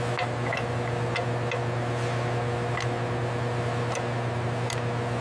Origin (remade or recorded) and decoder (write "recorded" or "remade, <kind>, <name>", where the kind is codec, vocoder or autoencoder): recorded